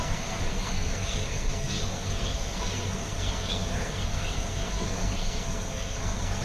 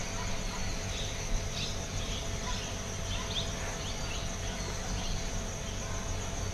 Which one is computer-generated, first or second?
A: first